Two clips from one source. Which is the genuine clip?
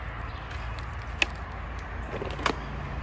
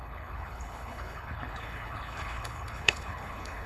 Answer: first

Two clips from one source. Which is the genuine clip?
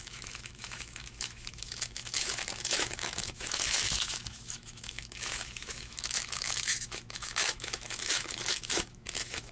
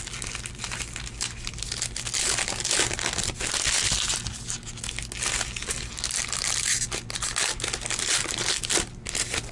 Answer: second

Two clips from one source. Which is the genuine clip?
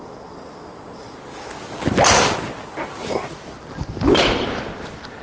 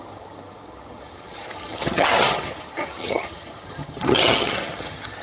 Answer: first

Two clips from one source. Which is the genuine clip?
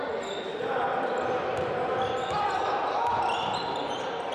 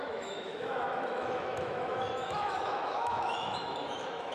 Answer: first